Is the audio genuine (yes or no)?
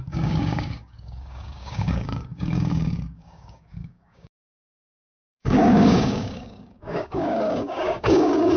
no